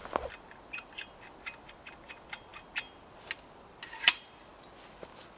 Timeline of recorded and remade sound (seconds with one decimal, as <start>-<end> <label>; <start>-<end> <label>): 0.0-5.4 recorded